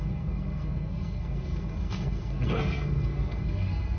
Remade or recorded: remade